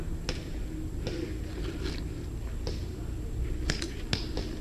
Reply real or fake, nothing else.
real